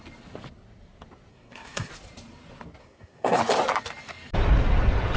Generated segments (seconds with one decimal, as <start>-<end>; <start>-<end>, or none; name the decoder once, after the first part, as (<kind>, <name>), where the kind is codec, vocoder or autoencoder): 1.3-1.9 (codec, SNAC); 2.8-3.4